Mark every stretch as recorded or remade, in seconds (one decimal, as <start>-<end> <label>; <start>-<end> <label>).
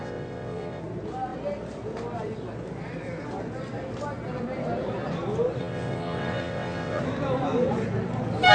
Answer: 0.0-0.8 remade; 0.8-5.6 recorded; 5.6-7.0 remade; 7.0-8.5 recorded